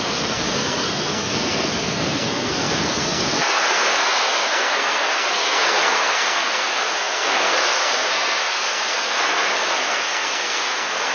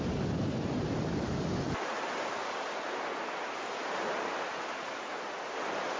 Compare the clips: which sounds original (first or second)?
second